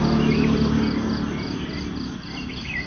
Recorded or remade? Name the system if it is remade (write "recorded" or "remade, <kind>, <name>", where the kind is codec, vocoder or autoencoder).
recorded